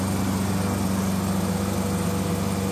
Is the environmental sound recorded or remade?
recorded